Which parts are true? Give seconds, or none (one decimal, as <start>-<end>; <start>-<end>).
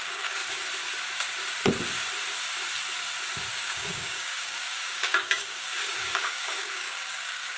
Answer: 0.4-3.5